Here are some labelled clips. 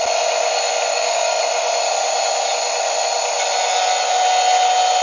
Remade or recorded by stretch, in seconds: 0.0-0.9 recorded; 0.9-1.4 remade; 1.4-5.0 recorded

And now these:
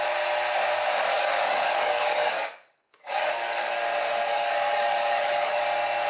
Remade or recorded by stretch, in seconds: 0.0-1.1 recorded; 1.1-3.7 remade; 3.7-4.3 recorded; 4.3-5.6 remade; 5.6-6.1 recorded

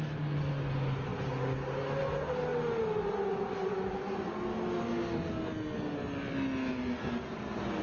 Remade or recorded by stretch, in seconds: 0.0-7.8 recorded

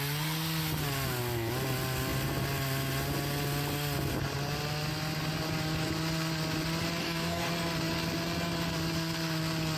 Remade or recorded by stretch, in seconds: 0.0-7.0 recorded; 7.0-7.5 remade; 7.5-9.8 recorded

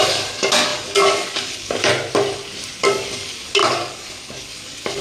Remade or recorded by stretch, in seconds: 0.0-1.9 remade; 1.9-2.8 recorded; 2.8-5.0 remade

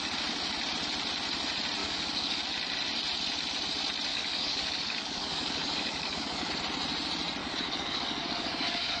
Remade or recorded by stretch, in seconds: 0.0-1.8 recorded; 1.8-2.4 remade; 2.4-4.1 recorded; 4.1-6.5 remade; 6.5-7.4 recorded; 7.4-9.0 remade

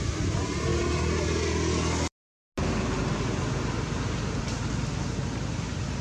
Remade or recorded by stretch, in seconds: 0.0-6.0 recorded

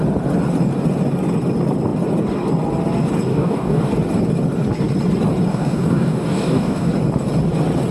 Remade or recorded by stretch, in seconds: 0.0-3.3 recorded; 3.3-3.9 remade; 3.9-5.5 recorded; 5.5-6.9 remade; 6.9-7.9 recorded